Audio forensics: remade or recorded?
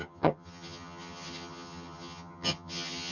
remade